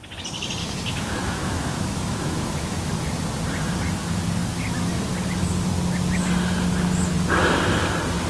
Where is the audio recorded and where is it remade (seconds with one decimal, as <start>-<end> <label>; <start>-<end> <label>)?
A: 0.0-0.6 recorded; 0.6-2.9 remade; 2.9-8.3 recorded